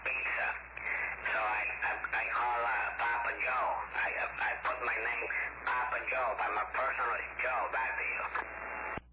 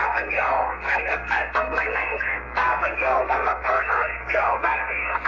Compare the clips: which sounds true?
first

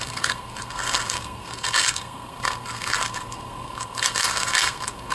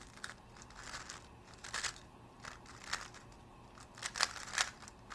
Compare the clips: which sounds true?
second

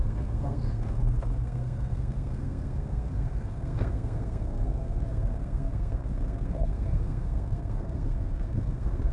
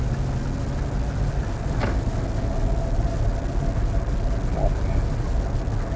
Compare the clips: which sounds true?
second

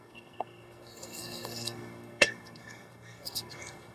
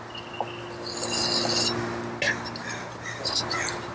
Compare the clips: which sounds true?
second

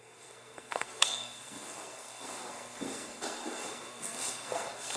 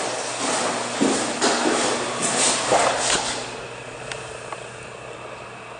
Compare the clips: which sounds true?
second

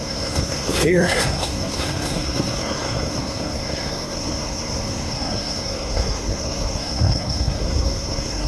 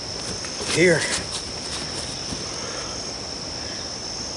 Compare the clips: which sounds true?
second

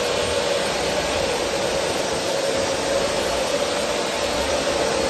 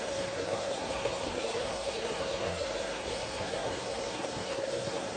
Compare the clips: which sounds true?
first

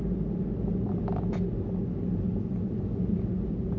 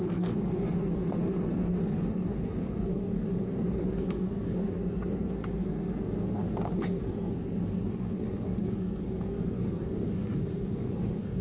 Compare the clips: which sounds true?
first